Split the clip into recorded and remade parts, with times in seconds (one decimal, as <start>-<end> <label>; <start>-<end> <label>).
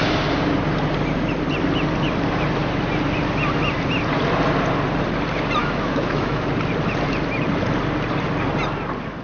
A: 0.0-5.6 recorded; 5.6-6.5 remade; 6.5-9.2 recorded